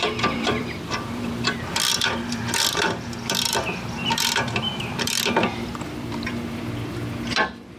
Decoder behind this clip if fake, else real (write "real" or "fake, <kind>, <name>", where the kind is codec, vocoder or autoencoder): fake, vocoder, BigVGAN v2